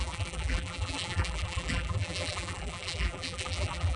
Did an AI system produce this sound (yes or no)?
yes